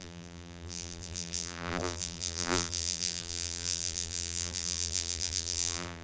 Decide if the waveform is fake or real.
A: fake